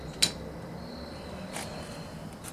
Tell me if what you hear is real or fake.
real